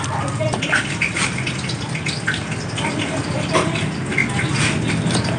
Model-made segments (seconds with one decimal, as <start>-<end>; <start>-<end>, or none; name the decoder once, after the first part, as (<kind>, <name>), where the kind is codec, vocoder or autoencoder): none